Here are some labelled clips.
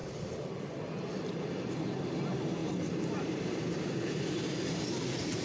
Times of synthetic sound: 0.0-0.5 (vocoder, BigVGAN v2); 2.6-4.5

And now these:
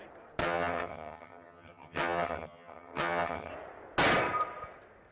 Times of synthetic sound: 0.4-3.5 (vocoder, HiFi-GAN)